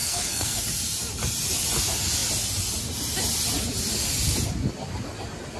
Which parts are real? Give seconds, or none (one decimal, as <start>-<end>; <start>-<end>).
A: 0.6-5.6